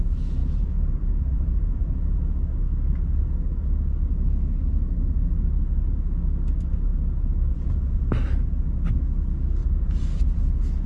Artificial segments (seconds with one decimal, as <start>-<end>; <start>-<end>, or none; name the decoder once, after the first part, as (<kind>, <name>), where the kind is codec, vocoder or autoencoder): 0.4-2.2 (vocoder, Vocos)